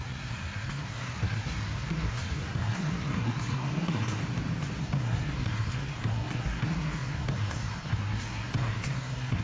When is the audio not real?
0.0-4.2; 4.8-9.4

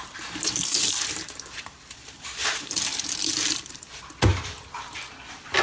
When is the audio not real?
0.7-2.7; 3.2-3.9

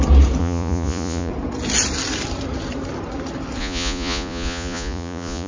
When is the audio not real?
0.4-1.3; 3.6-5.5

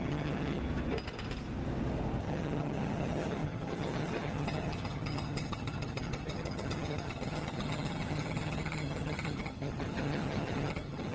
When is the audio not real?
0.0-0.6; 2.2-11.1

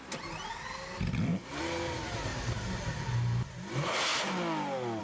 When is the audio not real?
1.3-1.8; 2.3-3.5

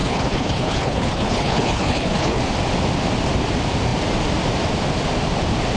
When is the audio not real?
0.0-2.4